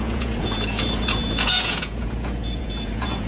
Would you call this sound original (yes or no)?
no